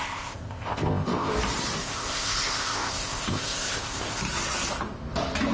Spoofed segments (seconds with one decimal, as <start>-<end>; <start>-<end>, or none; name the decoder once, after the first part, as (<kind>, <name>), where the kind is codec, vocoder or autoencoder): 0.0-1.3 (codec, ZipCodec); 1.8-4.2